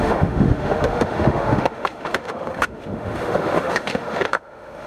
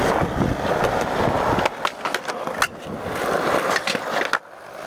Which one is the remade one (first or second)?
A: first